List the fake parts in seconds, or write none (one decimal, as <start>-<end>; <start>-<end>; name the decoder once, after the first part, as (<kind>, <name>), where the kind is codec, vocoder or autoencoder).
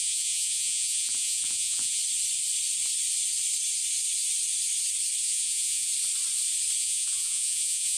0.0-2.0 (vocoder, Vocos); 5.2-5.9; 6.8-8.0